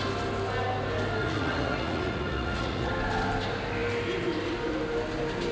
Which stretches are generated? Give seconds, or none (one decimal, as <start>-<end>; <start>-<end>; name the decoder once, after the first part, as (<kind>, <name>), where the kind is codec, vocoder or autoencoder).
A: 1.2-2.9 (vocoder, Vocos)